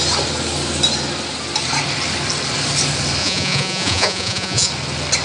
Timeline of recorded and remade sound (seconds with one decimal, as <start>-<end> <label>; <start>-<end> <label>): 0.0-3.2 recorded; 3.2-4.7 remade; 4.7-5.2 recorded